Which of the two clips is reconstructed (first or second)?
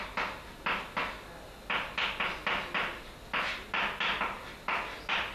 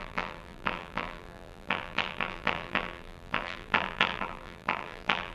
second